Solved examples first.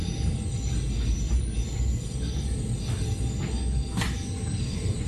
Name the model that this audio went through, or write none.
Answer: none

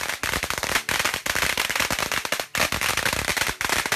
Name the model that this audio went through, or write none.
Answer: none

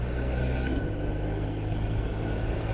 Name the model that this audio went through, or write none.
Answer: codec, SNAC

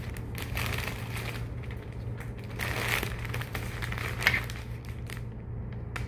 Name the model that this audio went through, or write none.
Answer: none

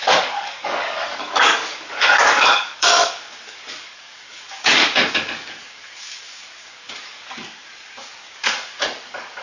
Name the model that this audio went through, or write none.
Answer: codec, DAC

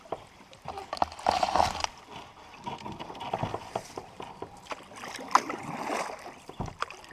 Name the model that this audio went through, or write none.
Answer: none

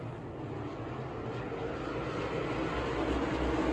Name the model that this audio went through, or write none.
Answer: none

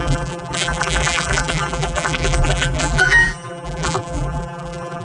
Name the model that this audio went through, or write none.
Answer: vocoder, BigVGAN v2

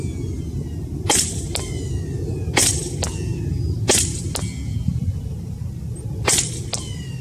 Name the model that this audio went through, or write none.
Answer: none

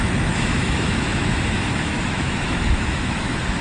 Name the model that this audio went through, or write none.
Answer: autoencoder, DAC-VAE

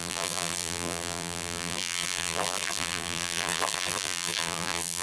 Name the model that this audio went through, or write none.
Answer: vocoder, BigVGAN v2